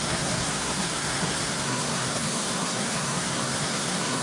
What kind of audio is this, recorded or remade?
remade